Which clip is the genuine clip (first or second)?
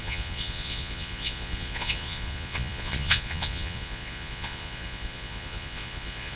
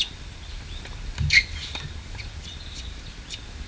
second